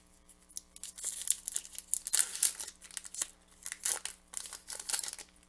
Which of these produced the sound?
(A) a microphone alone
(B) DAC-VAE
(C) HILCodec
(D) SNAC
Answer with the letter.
A